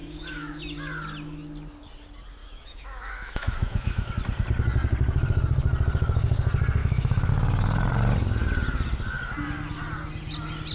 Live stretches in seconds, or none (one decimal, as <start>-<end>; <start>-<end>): 0.6-2.4; 4.1-6.8; 7.3-10.7